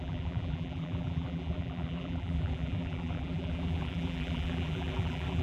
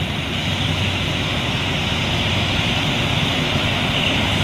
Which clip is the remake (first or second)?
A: first